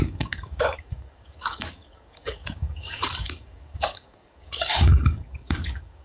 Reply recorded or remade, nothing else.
remade